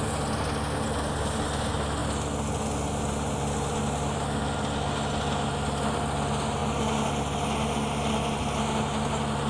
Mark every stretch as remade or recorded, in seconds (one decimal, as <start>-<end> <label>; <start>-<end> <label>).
0.0-9.5 recorded